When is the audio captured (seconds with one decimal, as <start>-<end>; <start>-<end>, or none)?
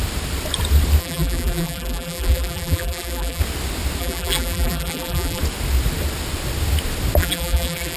0.0-1.0; 3.4-4.0; 5.4-7.2